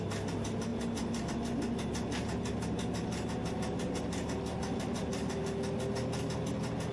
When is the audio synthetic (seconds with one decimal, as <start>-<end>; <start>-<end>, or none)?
none